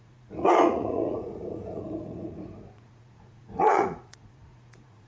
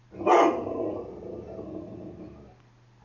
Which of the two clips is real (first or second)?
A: second